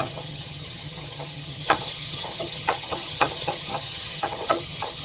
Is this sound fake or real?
fake